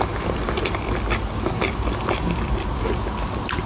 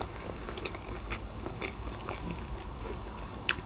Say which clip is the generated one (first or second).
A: second